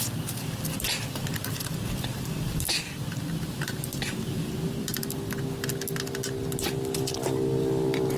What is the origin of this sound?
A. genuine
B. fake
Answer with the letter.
A